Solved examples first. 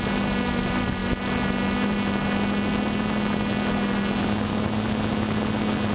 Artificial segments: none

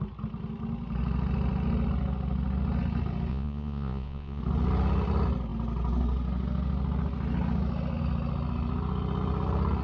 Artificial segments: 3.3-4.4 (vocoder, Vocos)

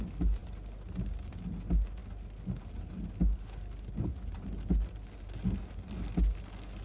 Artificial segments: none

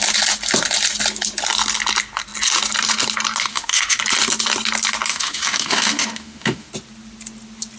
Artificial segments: 3.5-4.0 (autoencoder, DAC-VAE); 5.1-6.7

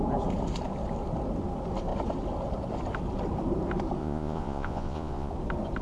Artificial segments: 4.0-5.3 (vocoder, Vocos)